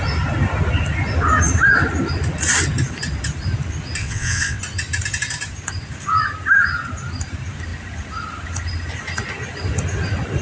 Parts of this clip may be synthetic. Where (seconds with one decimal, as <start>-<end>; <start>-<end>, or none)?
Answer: 4.0-4.6